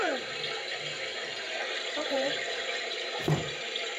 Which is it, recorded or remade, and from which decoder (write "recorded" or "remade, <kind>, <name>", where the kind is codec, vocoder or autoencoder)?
remade, vocoder, BigVGAN v2